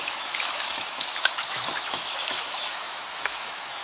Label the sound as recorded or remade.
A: remade